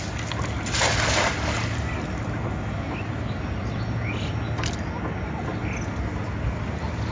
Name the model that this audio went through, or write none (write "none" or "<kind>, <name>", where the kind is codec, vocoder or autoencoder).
none